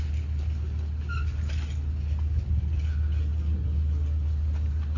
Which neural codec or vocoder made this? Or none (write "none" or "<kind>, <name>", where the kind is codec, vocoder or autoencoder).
none